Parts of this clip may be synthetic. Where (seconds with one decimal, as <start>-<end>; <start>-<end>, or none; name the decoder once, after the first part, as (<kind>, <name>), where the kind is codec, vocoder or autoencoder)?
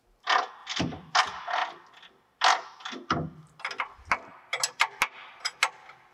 none